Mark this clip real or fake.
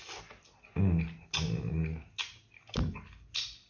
real